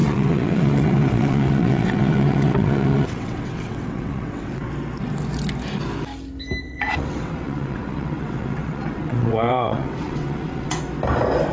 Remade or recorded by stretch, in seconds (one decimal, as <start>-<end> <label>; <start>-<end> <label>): 0.0-4.7 remade; 4.7-6.6 recorded; 6.6-10.8 remade; 10.8-11.5 recorded